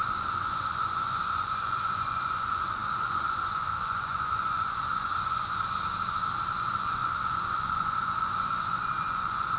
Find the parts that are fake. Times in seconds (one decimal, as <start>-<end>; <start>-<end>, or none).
0.0-5.9; 6.5-9.6